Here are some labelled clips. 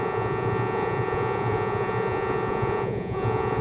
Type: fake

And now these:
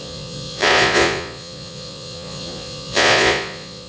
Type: fake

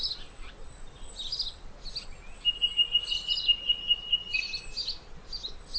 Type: real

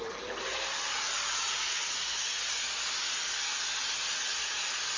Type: real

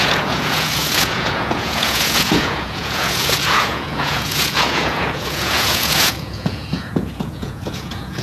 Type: fake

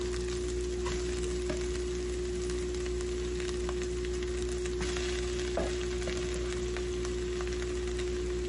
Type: real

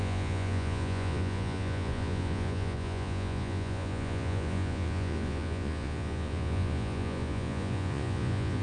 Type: fake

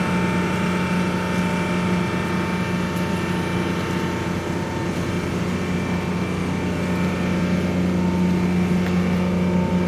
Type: real